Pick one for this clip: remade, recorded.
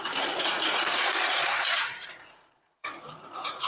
remade